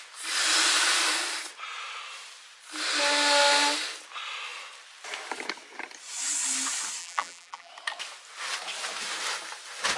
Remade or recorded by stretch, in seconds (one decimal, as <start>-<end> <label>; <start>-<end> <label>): 0.0-7.0 recorded; 7.0-7.7 remade; 7.7-10.0 recorded